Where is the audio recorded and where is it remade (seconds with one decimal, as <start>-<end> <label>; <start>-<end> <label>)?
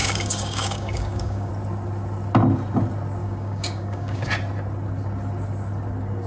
0.0-1.5 remade; 1.5-3.2 recorded; 3.2-4.3 remade; 4.3-6.3 recorded